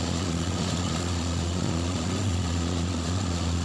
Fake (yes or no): yes